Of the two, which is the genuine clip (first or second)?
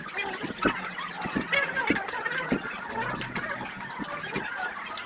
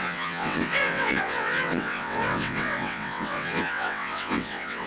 first